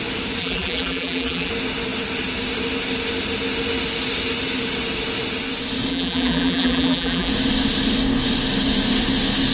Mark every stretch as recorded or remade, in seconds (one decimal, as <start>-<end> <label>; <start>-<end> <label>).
0.0-0.4 recorded; 0.4-1.5 remade; 1.5-5.9 recorded; 5.9-7.3 remade; 7.3-9.5 recorded